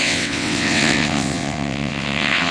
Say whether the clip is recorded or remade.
remade